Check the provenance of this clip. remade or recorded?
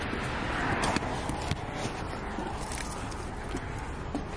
recorded